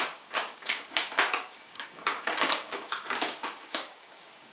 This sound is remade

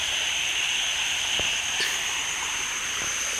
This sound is recorded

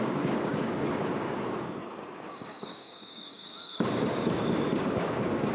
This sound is remade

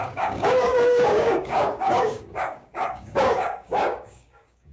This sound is remade